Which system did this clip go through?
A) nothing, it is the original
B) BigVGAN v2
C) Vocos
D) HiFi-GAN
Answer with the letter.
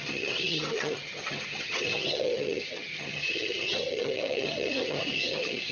D